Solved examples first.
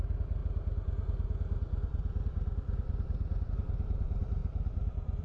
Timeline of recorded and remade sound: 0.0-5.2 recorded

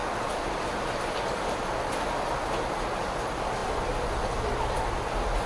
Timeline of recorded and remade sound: 0.0-5.5 recorded

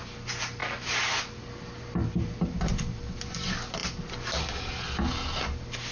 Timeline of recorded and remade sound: 0.0-5.9 recorded